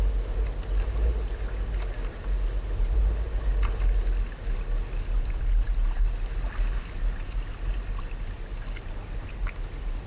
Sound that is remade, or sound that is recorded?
recorded